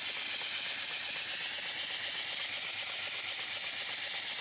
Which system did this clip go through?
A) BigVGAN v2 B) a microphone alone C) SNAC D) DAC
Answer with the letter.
B